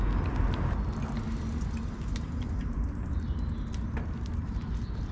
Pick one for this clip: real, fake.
real